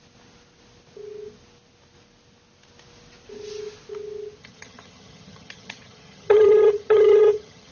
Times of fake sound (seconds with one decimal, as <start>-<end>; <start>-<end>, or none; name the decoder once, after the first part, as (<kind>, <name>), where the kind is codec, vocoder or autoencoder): 4.4-7.7 (vocoder, HiFi-GAN)